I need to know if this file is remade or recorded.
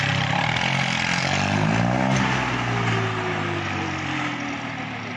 recorded